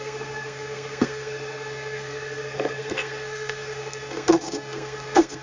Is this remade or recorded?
remade